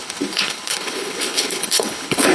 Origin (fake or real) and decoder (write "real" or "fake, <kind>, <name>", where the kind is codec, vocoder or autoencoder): fake, codec, HILCodec